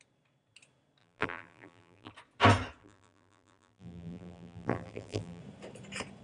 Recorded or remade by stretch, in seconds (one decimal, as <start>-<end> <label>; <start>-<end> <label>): 0.0-1.0 recorded; 1.0-2.1 remade; 2.1-2.8 recorded; 2.8-5.4 remade; 5.4-6.2 recorded